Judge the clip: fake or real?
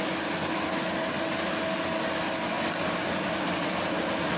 real